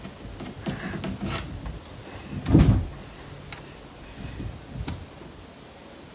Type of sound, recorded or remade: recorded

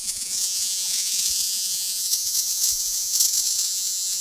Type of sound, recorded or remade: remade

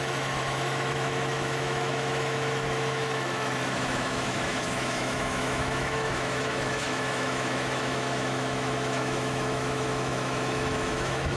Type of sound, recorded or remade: remade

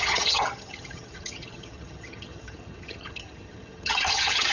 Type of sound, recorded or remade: remade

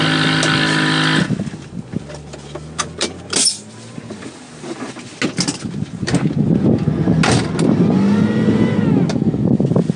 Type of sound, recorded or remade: recorded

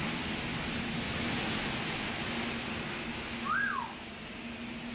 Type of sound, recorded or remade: recorded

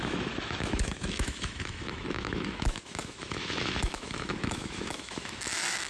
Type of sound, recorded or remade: remade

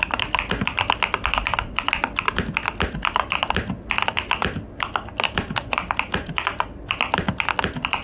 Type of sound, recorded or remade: recorded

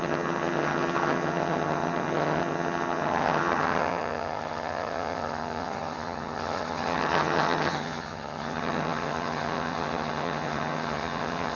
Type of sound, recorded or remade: remade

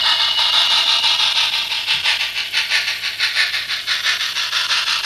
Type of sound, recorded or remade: recorded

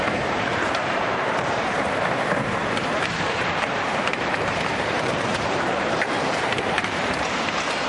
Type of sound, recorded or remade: remade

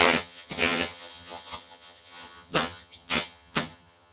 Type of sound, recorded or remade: remade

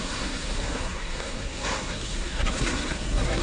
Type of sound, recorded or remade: remade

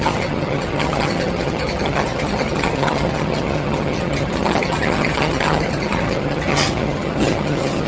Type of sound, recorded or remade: remade